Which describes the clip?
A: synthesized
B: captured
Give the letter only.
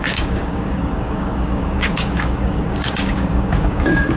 A